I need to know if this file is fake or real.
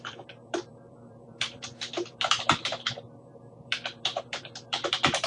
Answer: fake